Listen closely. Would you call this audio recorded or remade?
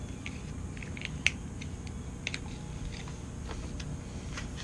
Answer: recorded